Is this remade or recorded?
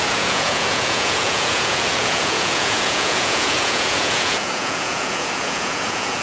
remade